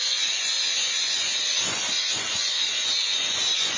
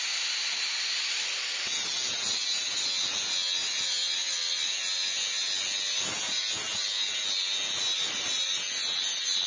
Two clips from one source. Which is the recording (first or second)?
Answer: second